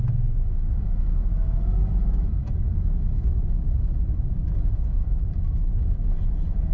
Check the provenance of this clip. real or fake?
fake